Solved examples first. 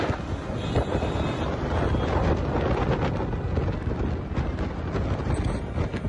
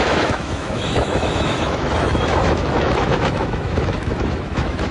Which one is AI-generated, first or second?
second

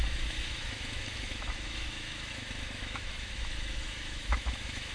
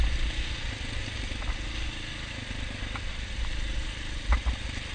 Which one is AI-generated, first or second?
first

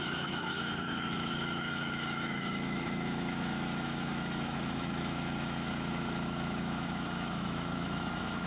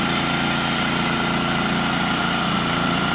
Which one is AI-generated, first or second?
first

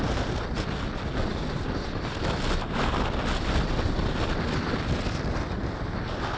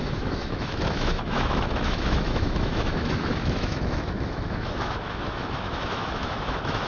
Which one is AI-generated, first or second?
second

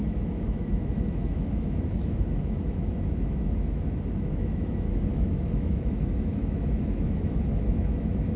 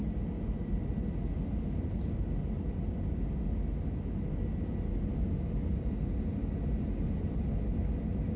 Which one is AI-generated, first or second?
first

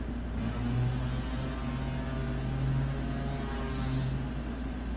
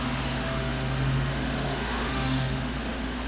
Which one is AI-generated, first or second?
second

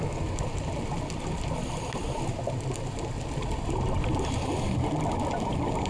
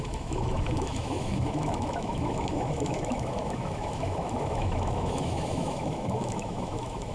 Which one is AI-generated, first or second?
second